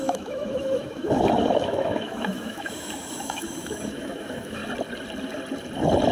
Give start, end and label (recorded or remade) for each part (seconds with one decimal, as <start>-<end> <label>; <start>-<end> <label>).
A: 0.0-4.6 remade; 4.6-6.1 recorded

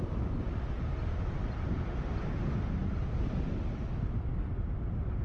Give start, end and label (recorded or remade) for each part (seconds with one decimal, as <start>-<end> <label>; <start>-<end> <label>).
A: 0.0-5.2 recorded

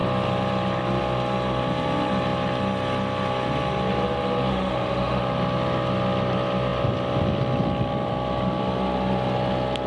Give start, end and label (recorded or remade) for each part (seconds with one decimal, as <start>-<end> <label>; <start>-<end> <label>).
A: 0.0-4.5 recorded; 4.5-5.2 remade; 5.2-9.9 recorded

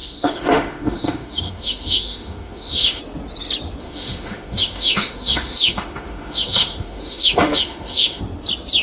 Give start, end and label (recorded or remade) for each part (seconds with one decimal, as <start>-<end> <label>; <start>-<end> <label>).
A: 0.0-3.0 remade; 3.0-3.8 recorded; 3.8-8.2 remade; 8.2-8.8 recorded

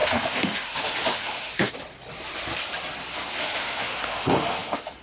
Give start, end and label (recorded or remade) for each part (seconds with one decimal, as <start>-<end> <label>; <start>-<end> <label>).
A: 0.0-1.7 remade; 1.7-3.4 recorded; 3.4-5.0 remade